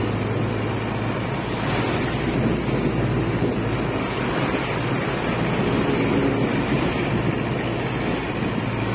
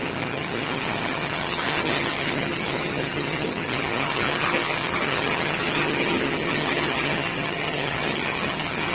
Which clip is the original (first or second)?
first